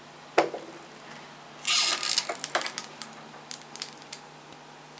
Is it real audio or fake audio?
real